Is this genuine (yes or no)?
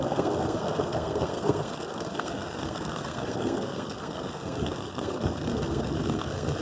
no